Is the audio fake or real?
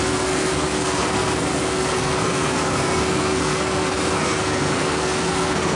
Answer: fake